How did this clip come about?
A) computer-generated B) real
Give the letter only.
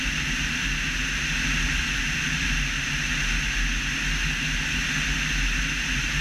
B